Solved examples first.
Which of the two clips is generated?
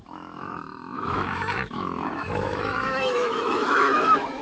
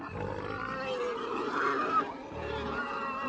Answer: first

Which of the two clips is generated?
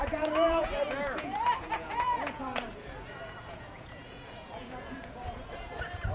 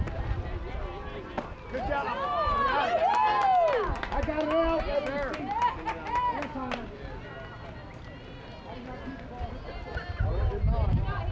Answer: first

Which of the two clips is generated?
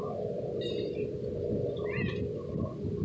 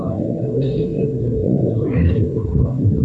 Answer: second